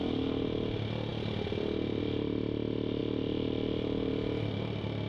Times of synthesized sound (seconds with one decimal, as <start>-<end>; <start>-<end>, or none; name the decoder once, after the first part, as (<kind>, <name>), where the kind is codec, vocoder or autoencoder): none